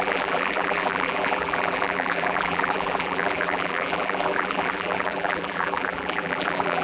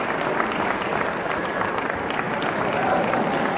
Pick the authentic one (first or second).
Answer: second